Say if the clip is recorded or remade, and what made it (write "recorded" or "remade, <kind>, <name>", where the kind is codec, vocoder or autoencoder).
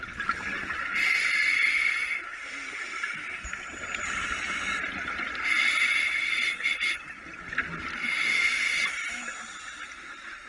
recorded